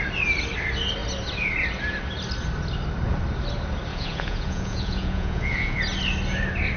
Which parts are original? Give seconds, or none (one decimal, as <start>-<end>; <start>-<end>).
0.0-3.9; 5.8-6.8

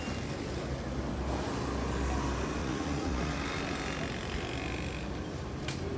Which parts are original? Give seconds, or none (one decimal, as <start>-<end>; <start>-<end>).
0.0-2.6; 3.3-6.0